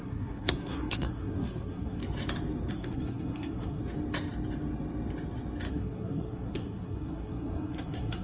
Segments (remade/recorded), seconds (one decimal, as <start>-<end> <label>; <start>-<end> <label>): 0.0-2.0 remade; 2.0-2.7 recorded; 2.7-3.8 remade; 3.8-5.7 recorded; 5.7-8.2 remade